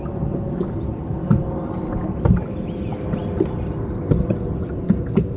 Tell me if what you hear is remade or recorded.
recorded